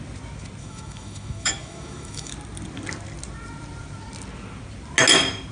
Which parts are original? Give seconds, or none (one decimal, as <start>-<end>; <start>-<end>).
0.0-0.6; 2.3-5.5